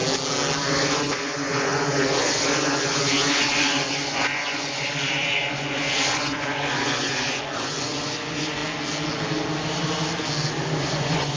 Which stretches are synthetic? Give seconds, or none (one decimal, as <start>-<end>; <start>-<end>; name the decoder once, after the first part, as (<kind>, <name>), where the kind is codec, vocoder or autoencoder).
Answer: 0.7-8.6 (vocoder, Vocos); 10.8-11.4